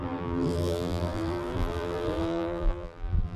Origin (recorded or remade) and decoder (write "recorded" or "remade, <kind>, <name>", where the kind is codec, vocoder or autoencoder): remade, vocoder, BigVGAN v2